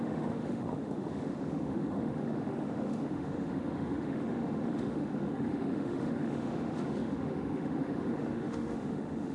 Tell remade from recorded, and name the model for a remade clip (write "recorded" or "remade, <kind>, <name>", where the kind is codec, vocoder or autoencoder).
remade, autoencoder, DAC-VAE